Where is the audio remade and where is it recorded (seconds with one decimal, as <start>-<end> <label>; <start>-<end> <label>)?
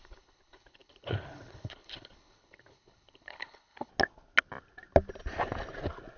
0.0-3.9 remade; 3.9-6.2 recorded